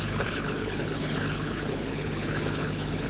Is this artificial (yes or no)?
yes